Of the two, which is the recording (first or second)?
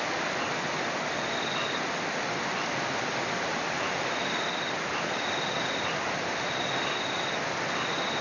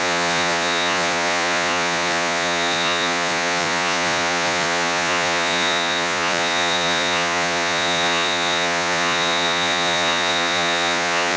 first